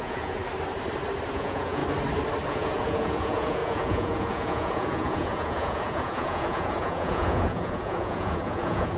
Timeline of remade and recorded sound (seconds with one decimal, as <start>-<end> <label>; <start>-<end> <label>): 0.0-0.4 remade; 0.4-1.3 recorded; 1.3-1.8 remade; 1.8-2.5 recorded; 2.5-9.0 remade